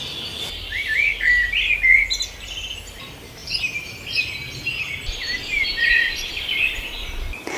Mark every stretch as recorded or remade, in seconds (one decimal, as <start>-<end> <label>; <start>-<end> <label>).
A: 0.0-3.4 recorded; 3.4-4.1 remade; 4.1-5.8 recorded; 5.8-6.5 remade; 6.5-7.6 recorded